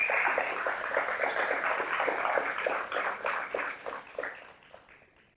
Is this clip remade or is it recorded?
recorded